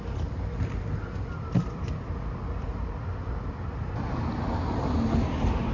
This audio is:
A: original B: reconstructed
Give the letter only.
A